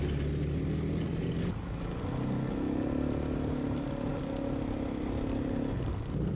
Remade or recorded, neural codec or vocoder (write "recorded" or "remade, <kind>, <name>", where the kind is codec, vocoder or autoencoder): recorded